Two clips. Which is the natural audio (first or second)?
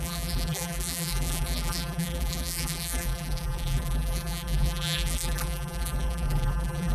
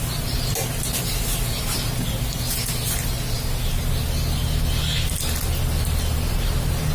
second